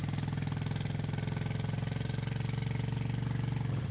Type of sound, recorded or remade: recorded